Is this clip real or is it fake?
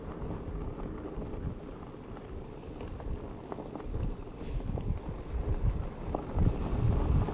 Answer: real